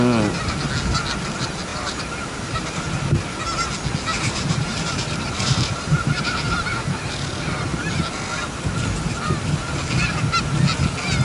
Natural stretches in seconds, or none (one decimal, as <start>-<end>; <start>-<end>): 0.0-1.7; 2.7-4.1; 7.0-11.2